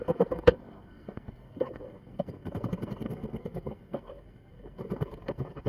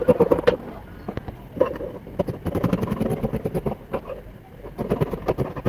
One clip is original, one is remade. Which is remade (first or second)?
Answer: first